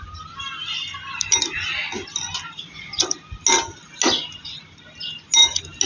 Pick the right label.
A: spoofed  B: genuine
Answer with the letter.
B